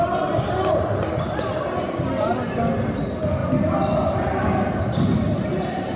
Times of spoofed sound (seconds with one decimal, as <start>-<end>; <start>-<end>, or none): none